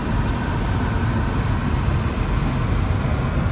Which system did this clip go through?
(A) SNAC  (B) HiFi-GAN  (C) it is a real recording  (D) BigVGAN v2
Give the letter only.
C